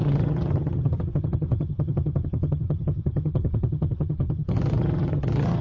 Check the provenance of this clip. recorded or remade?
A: remade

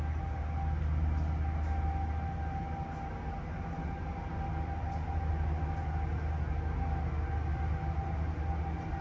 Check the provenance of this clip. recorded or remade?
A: recorded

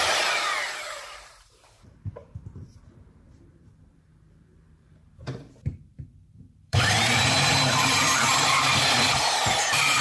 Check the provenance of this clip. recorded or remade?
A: remade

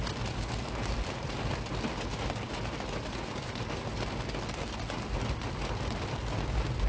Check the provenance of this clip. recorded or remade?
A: recorded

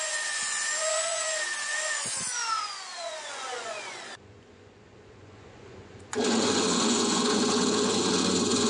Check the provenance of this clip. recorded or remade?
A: remade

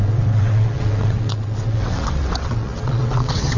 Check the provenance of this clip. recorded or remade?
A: remade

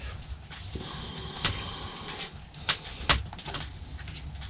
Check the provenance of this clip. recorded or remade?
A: recorded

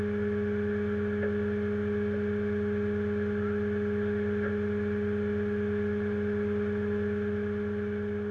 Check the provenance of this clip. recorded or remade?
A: recorded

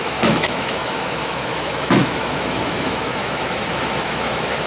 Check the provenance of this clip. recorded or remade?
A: remade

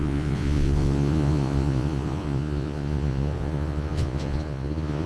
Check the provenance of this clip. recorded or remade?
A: remade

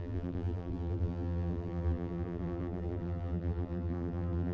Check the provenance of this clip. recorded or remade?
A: remade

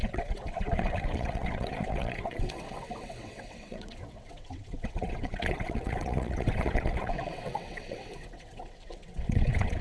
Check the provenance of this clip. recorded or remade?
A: remade